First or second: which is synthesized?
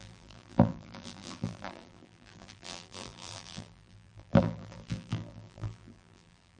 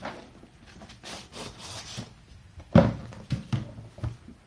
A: first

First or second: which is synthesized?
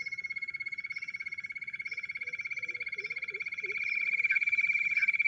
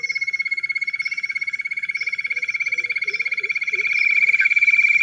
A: second